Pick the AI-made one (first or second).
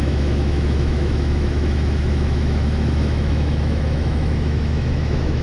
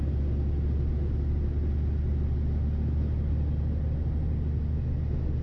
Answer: first